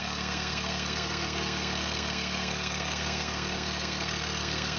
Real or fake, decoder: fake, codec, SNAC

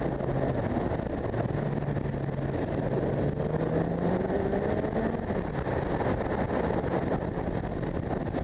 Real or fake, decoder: real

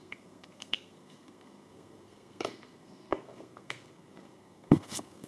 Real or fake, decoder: fake, codec, SNAC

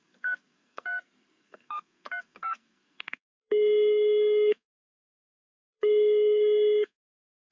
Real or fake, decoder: fake, codec, SNAC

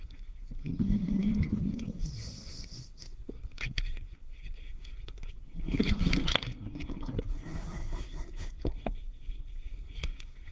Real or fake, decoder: fake, codec, SNAC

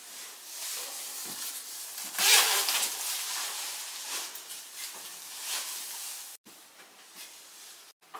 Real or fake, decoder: real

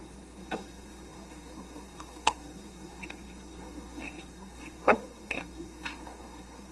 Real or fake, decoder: fake, codec, SNAC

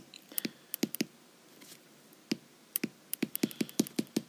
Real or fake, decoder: real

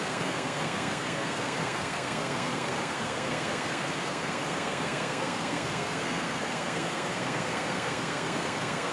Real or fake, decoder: fake, codec, SNAC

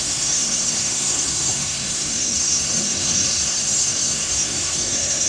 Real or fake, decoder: fake, codec, SNAC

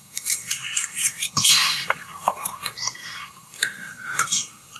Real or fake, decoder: fake, codec, SNAC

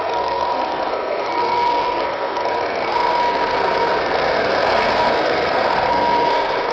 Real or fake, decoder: fake, codec, SNAC